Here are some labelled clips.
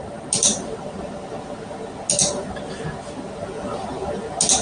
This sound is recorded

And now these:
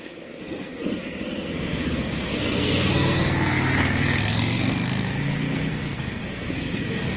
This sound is remade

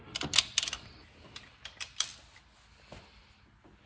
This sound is recorded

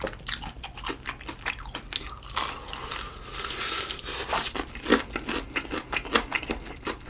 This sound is recorded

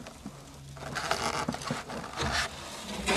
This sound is recorded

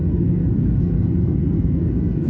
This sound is remade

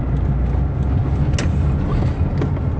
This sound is recorded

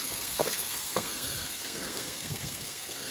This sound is remade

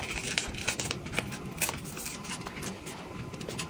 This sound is recorded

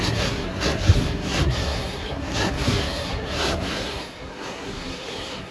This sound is remade